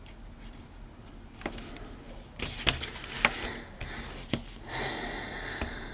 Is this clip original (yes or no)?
yes